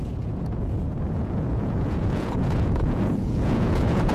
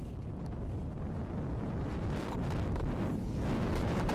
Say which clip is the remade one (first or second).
first